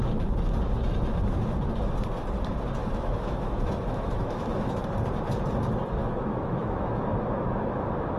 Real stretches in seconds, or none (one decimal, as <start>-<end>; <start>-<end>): 0.0-2.8; 4.8-6.0; 7.2-8.2